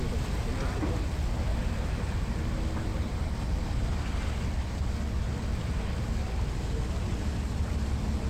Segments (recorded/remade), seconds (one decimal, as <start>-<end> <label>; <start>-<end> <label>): 0.0-1.5 recorded; 1.5-2.1 remade; 2.1-2.9 recorded; 2.9-3.8 remade; 3.8-8.3 recorded